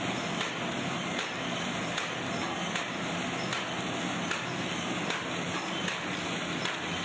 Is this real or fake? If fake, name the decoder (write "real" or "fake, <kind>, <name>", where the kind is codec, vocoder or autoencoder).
real